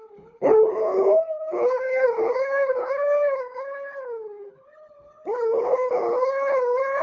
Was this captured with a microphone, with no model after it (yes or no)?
no